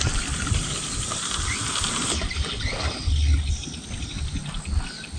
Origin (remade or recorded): recorded